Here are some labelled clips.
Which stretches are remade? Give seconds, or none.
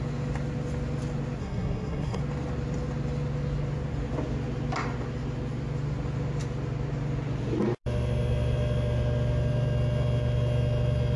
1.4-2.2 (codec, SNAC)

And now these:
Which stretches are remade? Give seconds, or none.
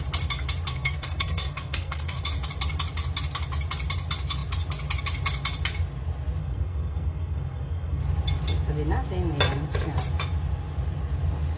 0.7-2.2 (codec, SNAC); 6.4-8.0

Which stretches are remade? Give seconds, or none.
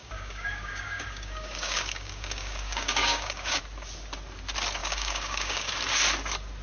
0.0-3.6 (codec, DAC); 4.8-5.7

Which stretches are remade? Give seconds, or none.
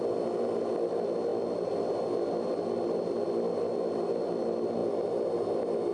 none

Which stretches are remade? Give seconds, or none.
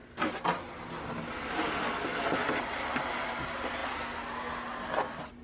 none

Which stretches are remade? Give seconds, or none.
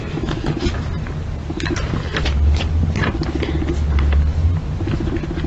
none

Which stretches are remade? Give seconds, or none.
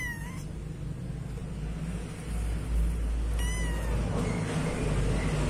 none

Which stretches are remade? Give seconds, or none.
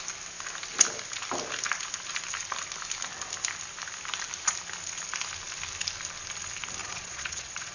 6.8-7.7 (vocoder, Vocos)